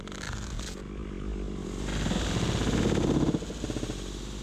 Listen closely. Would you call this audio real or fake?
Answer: real